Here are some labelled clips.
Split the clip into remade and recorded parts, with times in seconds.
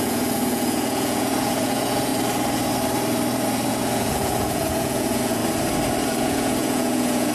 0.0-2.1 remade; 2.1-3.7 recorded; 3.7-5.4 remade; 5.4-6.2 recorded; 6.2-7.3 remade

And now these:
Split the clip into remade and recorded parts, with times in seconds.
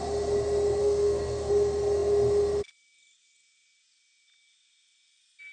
0.0-0.8 recorded; 0.8-1.5 remade; 1.5-5.5 recorded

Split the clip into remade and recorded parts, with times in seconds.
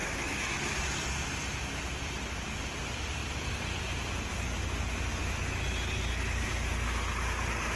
0.0-0.8 remade; 0.8-7.8 recorded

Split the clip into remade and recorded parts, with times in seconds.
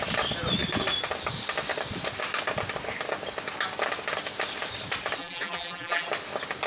0.0-5.2 recorded; 5.2-6.1 remade; 6.1-6.7 recorded